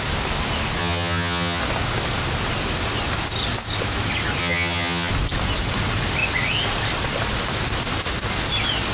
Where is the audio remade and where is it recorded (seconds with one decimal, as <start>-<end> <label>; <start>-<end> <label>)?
0.0-0.8 recorded; 0.8-1.6 remade; 1.6-4.4 recorded; 4.4-5.1 remade; 5.1-8.9 recorded